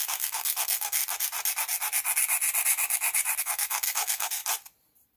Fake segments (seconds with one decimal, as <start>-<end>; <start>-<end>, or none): 0.0-1.0; 3.4-4.4